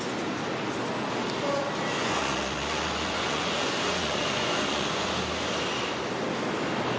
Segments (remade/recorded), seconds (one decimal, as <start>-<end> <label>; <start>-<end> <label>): 0.0-2.0 recorded; 2.0-5.1 remade; 5.1-7.0 recorded